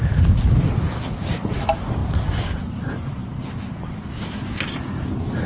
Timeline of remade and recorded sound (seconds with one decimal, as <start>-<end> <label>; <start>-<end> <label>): 0.0-5.5 recorded